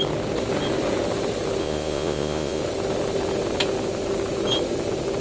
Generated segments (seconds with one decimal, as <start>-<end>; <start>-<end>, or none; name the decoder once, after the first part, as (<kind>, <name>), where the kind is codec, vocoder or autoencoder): 1.6-2.6 (vocoder, Vocos)